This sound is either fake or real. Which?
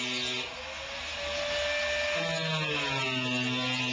real